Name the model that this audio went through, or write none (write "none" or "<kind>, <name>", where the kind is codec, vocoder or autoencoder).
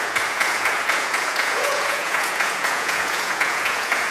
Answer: vocoder, Vocos